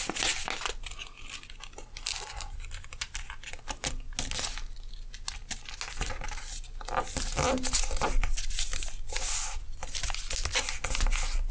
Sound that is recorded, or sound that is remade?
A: recorded